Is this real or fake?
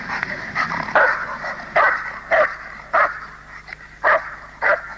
real